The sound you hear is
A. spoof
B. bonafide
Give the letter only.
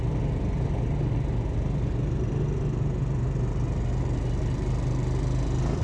B